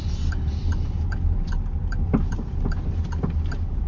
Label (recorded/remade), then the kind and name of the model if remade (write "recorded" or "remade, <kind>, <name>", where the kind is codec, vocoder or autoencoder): recorded